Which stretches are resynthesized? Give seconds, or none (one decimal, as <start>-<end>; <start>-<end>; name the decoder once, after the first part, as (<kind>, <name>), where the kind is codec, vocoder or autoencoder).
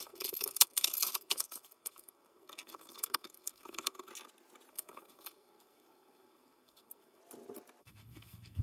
0.0-4.1 (codec, SNAC); 4.7-7.2; 7.8-8.6